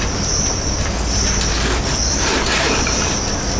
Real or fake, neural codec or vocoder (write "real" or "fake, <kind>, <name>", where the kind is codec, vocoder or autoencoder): real